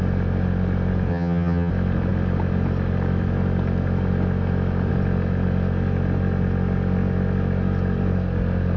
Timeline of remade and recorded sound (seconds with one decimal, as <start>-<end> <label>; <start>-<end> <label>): 0.0-1.1 recorded; 1.1-1.7 remade; 1.7-8.8 recorded